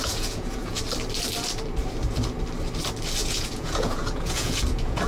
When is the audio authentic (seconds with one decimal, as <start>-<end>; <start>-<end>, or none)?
0.8-3.2